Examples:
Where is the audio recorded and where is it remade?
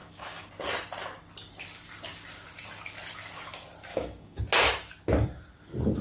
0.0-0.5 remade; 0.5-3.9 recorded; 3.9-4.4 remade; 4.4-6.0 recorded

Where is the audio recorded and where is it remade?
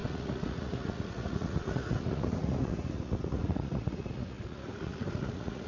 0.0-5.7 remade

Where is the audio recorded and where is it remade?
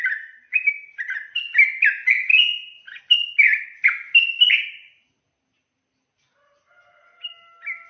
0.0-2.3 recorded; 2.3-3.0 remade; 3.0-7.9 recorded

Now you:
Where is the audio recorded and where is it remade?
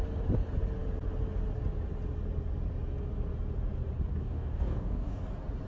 0.0-4.1 recorded; 4.1-5.2 remade; 5.2-5.7 recorded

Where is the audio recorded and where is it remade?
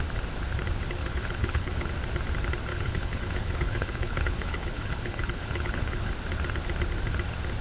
0.0-1.0 recorded; 1.0-1.9 remade; 1.9-2.7 recorded; 2.7-6.1 remade; 6.1-7.6 recorded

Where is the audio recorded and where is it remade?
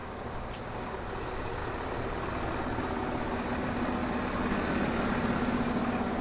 0.0-1.0 remade; 1.0-6.2 recorded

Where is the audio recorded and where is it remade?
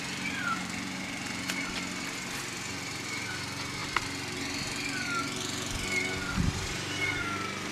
0.0-7.7 recorded